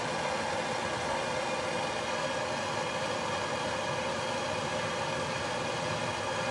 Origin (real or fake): real